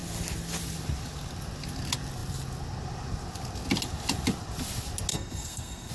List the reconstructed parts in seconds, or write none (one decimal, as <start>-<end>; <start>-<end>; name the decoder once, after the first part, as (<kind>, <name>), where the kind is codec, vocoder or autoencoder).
5.1-5.9 (codec, SNAC)